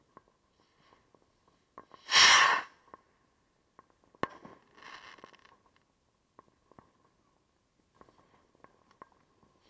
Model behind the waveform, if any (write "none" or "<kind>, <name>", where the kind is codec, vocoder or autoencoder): none